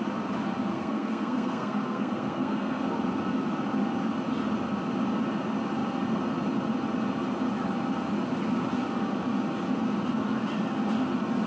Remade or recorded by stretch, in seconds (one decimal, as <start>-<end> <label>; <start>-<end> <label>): 0.0-0.7 recorded; 0.7-2.8 remade; 2.8-11.5 recorded